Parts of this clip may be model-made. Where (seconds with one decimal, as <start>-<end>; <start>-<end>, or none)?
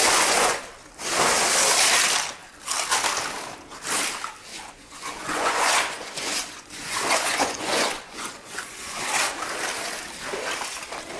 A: 0.0-0.6; 4.5-9.1